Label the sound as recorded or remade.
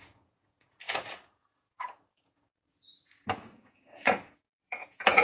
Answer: remade